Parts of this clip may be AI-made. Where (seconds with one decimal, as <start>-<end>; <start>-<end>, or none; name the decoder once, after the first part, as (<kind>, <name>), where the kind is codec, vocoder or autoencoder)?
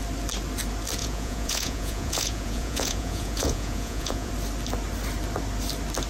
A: 1.0-4.3 (vocoder, Vocos)